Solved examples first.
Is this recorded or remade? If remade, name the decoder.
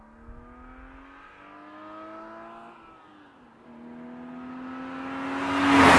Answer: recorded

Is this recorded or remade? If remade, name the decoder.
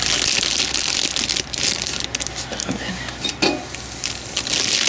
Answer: recorded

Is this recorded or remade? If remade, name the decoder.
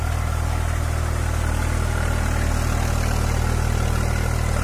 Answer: recorded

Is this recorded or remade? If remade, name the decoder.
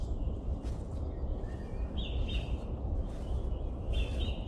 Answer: recorded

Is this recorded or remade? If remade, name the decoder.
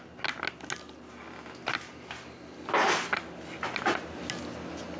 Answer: recorded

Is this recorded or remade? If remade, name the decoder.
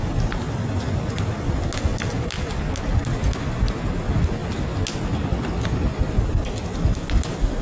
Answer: recorded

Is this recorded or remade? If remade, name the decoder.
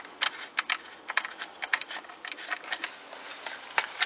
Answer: recorded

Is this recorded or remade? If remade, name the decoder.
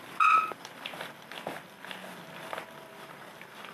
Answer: recorded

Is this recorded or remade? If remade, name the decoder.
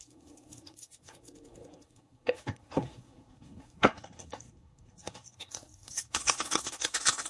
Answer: remade, codec, SNAC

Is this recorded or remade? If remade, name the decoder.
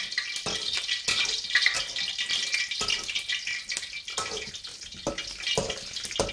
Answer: recorded